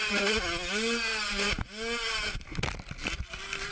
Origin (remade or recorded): recorded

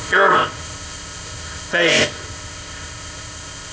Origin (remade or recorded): remade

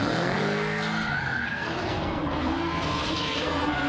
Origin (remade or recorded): remade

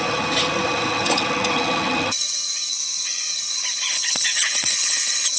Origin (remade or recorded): remade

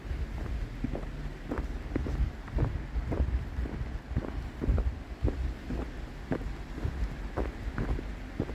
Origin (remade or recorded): recorded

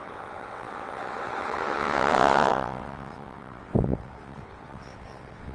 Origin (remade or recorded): remade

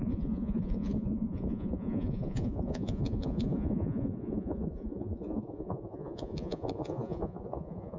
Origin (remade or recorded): remade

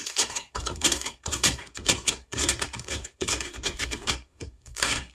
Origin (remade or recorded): remade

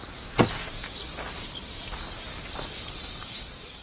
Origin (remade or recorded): recorded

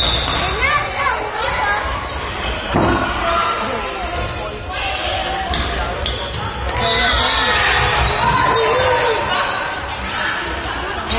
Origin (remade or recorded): recorded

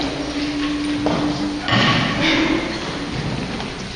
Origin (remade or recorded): recorded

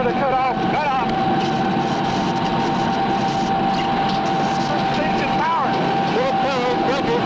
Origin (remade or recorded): recorded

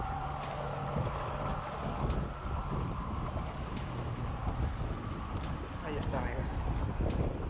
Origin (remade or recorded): recorded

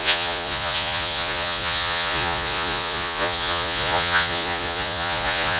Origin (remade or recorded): remade